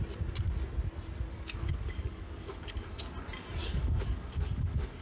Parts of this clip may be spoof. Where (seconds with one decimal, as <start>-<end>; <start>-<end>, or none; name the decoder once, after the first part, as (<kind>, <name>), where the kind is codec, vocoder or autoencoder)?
1.3-3.0 (codec, DAC); 3.6-5.0